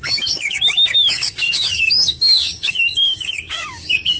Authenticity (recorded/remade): remade